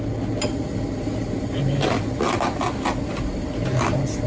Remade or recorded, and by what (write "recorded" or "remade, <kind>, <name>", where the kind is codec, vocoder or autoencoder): recorded